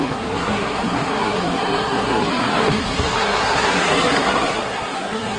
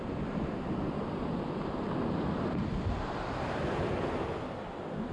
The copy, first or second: first